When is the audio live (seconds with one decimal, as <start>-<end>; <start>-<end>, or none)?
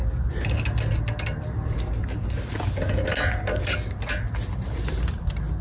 0.0-5.6